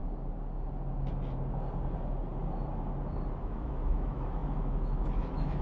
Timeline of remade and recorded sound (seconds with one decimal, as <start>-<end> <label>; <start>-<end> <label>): 0.0-3.4 recorded; 3.4-5.6 remade